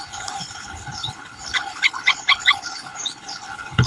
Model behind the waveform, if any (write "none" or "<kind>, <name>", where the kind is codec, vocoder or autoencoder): codec, HILCodec